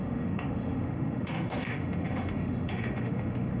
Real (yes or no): no